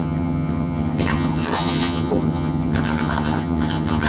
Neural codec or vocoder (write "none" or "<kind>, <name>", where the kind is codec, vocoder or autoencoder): vocoder, HiFi-GAN